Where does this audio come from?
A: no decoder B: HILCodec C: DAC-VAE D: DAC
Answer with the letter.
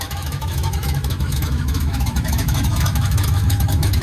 C